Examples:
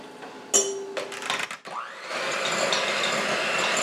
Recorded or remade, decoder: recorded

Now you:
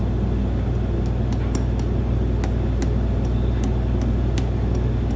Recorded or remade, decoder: recorded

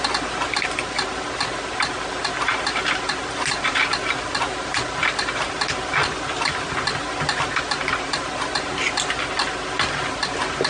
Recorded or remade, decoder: recorded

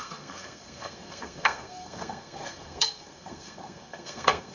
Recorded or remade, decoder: remade, codec, SNAC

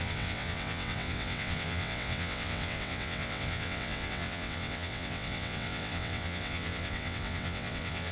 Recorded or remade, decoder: remade, vocoder, WaveNeXt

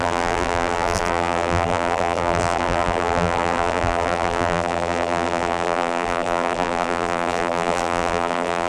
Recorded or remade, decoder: remade, vocoder, BigVGAN v2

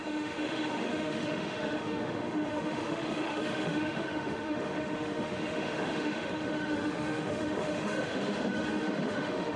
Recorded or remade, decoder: remade, autoencoder, DAC-VAE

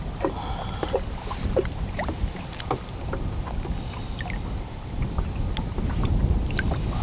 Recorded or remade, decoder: recorded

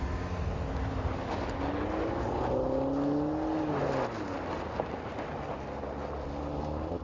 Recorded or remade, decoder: recorded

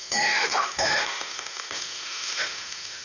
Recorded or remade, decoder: remade, autoencoder, DAC-VAE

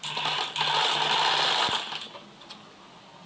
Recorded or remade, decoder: recorded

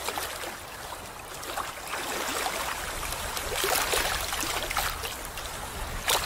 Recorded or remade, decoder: recorded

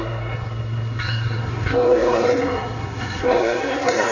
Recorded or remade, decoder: remade, codec, SNAC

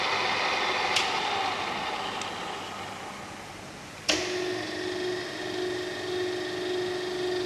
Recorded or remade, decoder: recorded